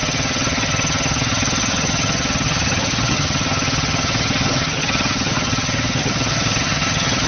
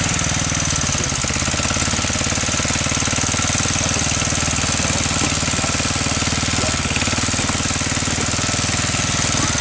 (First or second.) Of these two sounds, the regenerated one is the first